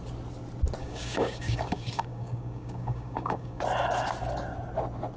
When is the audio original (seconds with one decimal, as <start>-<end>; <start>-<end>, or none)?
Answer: 0.0-0.8; 3.6-5.2